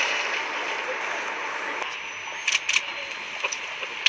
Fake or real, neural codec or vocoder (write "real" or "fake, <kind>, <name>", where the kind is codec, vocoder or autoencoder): real